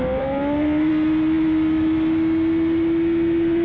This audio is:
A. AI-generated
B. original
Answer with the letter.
B